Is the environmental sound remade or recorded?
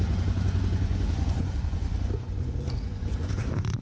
remade